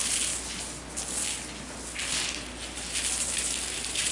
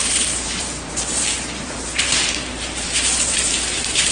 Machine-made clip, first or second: second